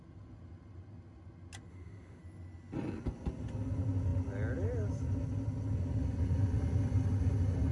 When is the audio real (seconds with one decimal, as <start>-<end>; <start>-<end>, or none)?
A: 0.0-1.7; 2.2-7.7